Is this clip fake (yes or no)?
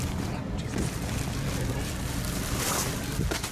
no